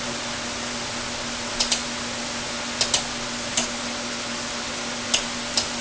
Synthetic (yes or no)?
no